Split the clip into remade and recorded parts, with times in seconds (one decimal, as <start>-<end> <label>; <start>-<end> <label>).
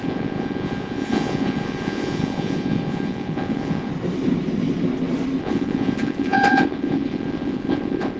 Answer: 0.0-3.9 remade; 3.9-5.4 recorded; 5.4-8.2 remade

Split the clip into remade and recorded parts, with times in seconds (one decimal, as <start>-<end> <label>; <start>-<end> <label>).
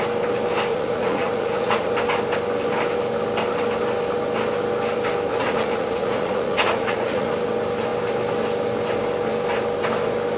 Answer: 0.0-0.7 recorded; 0.7-1.9 remade; 1.9-5.3 recorded; 5.3-7.3 remade; 7.3-10.4 recorded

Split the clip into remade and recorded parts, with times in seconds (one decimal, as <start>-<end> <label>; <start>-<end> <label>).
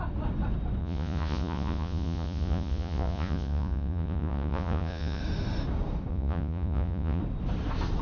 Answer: 0.0-0.8 recorded; 0.8-5.2 remade; 5.2-6.1 recorded; 6.1-7.2 remade; 7.2-8.0 recorded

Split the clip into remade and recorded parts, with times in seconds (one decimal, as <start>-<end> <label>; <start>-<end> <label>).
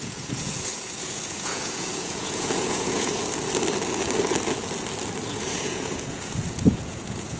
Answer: 0.0-3.2 remade; 3.2-5.3 recorded; 5.3-7.4 remade